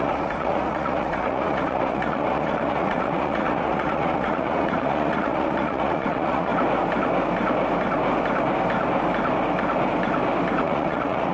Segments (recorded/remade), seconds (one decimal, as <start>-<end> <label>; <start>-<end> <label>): 0.0-6.5 remade; 6.5-10.6 recorded; 10.6-11.3 remade